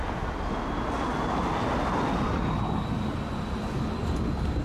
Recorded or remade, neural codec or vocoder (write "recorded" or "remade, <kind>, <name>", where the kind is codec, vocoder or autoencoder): recorded